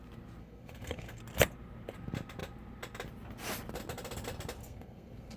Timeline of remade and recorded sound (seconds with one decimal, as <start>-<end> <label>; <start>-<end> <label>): 0.0-0.4 recorded; 0.4-1.2 remade; 1.2-4.6 recorded; 4.6-5.4 remade